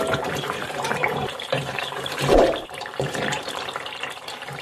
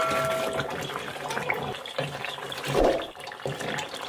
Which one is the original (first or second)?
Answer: second